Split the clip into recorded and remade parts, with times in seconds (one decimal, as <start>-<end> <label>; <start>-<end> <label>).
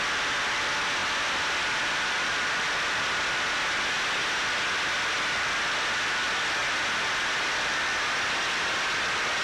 0.0-1.0 recorded; 1.0-3.8 remade; 3.8-6.6 recorded; 6.6-8.6 remade; 8.6-9.4 recorded